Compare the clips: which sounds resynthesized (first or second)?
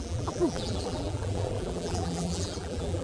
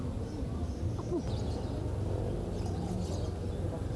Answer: first